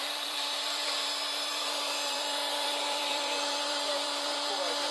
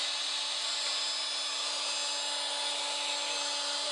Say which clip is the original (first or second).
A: second